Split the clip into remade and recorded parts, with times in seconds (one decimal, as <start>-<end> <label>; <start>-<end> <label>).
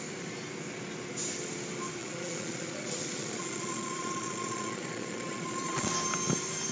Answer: 0.0-2.0 recorded; 2.0-5.9 remade; 5.9-6.7 recorded